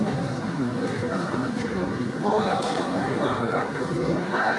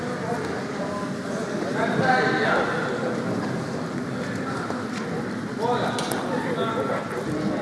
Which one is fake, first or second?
first